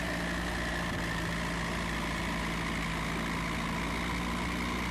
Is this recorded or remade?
recorded